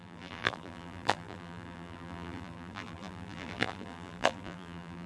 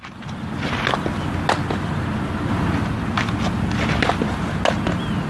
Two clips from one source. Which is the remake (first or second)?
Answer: first